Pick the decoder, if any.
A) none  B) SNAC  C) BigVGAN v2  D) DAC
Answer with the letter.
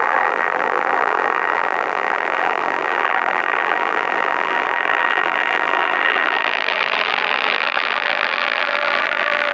C